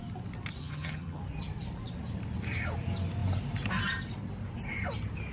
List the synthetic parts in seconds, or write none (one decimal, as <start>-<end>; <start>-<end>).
0.6-1.2